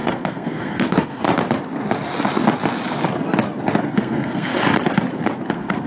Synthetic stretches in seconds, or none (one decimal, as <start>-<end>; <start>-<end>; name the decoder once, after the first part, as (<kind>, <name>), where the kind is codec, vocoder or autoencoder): 0.0-1.2 (codec, SNAC); 3.9-4.5; 5.5-5.9